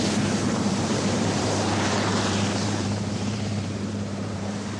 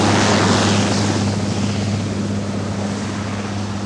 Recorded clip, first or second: second